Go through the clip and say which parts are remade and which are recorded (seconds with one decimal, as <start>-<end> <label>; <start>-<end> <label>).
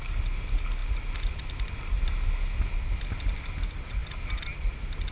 0.0-5.1 recorded